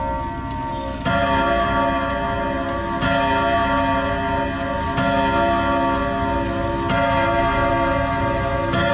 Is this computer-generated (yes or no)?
no